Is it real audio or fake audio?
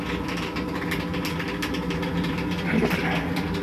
real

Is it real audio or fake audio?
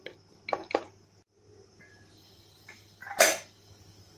real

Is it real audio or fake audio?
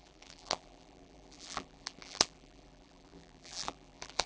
fake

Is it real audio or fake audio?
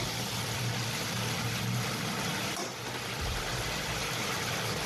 fake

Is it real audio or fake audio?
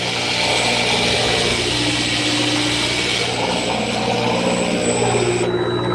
real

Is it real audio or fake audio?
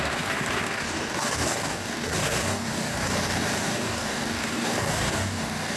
fake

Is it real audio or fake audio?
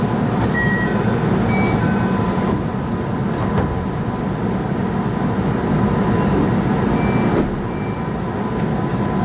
real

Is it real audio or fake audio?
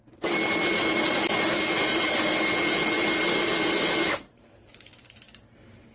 real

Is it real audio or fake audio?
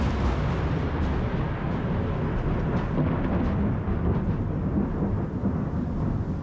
real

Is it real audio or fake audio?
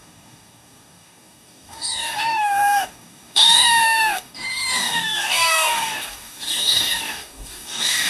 fake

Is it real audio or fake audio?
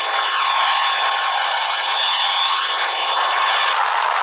real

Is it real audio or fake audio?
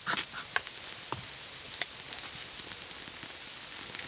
real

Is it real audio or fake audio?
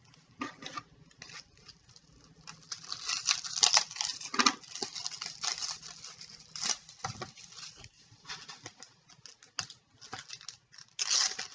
real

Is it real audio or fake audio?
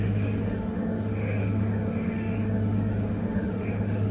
fake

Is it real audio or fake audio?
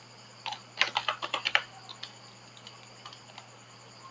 real